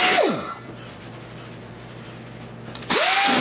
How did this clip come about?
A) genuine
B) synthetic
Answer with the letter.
A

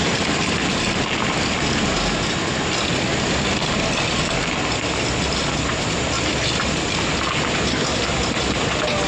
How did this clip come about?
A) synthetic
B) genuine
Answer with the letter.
B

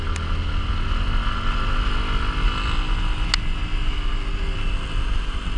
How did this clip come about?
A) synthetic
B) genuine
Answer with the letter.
B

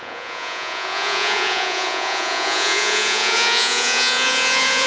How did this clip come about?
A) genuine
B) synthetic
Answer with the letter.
B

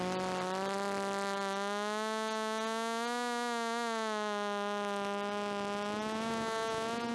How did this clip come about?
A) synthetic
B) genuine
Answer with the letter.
B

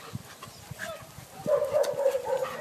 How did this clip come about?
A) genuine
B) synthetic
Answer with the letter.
A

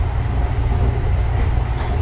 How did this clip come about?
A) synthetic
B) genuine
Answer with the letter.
B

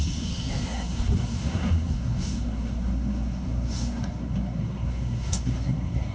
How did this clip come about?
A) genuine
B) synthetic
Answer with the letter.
B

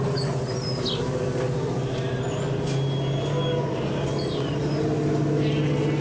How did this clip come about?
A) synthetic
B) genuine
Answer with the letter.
B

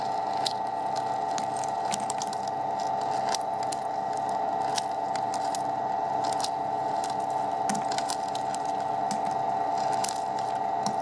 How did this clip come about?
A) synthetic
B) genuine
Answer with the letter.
B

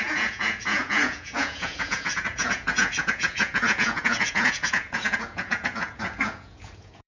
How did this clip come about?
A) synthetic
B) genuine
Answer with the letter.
A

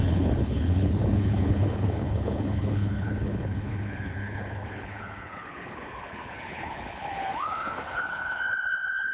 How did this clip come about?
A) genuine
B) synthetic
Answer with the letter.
B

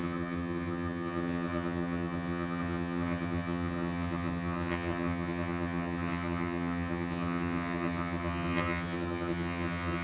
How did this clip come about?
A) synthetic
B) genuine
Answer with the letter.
A